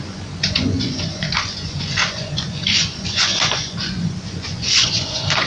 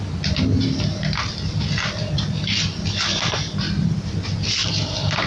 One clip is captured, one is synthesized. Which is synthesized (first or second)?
first